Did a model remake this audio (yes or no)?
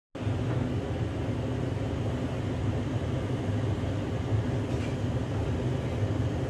no